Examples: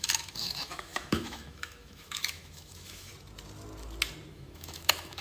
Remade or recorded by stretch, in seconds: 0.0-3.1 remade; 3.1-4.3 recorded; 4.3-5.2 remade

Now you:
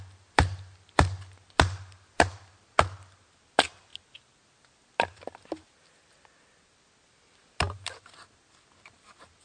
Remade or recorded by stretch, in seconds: 0.0-9.4 recorded

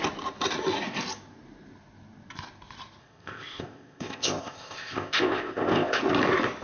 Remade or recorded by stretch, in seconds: 0.0-3.0 recorded; 3.0-6.0 remade; 6.0-6.6 recorded